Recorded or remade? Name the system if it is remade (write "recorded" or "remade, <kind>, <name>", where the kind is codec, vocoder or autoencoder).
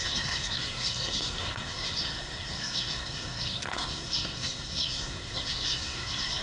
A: remade, codec, SNAC